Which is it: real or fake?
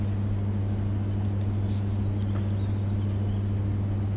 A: real